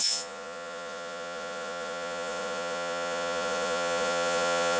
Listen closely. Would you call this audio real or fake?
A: fake